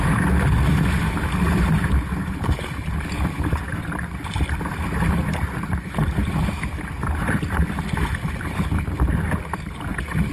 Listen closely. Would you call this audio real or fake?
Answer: real